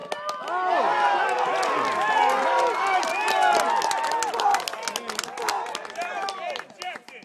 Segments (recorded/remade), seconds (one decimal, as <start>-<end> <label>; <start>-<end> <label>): 0.0-7.2 recorded